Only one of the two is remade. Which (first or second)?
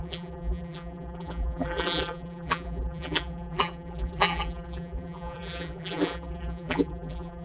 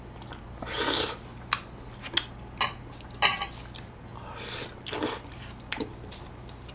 first